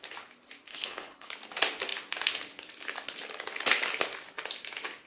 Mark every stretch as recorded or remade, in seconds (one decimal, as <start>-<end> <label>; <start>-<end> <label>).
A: 0.0-0.7 recorded; 0.7-1.3 remade; 1.3-5.1 recorded